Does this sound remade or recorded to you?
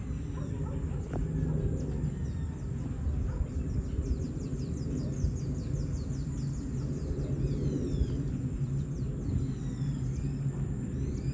recorded